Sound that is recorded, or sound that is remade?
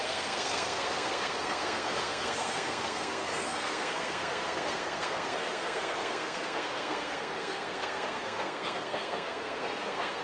remade